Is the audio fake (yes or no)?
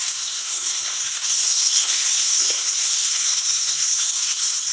yes